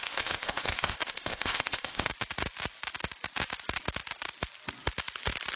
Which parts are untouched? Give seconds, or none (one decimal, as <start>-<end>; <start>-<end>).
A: 2.1-5.6